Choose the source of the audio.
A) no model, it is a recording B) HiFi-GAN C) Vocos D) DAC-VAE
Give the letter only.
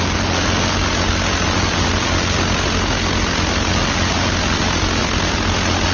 A